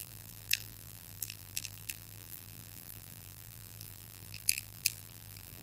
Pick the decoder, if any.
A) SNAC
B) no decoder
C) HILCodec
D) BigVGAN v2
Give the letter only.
D